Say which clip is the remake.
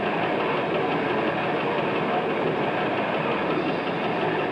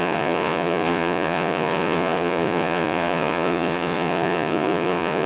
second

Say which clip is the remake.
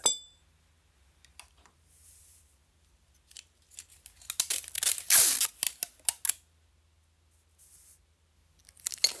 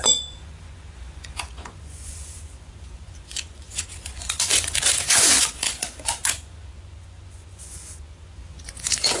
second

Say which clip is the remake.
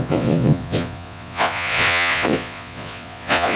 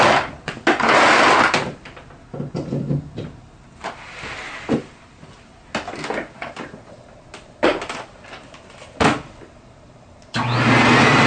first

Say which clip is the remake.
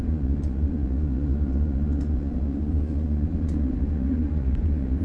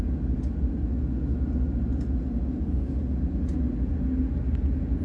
first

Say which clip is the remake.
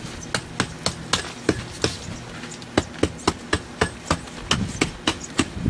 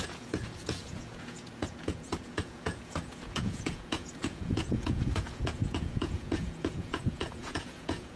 second